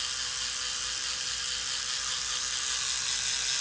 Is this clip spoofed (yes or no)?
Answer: no